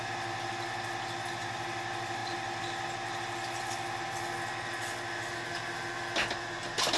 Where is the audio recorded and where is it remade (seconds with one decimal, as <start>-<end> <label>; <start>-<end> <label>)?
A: 0.0-7.0 recorded